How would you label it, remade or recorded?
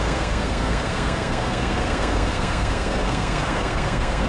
remade